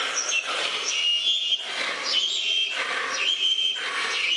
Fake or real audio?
real